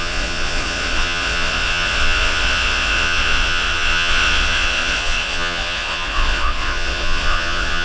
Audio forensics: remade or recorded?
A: remade